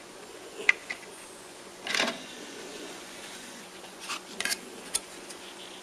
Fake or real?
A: fake